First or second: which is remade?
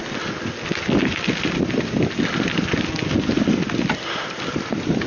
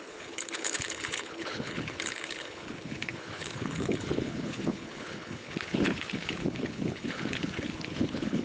second